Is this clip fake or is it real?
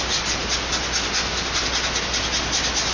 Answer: real